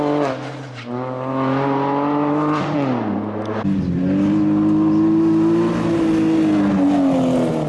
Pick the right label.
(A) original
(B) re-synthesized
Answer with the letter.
A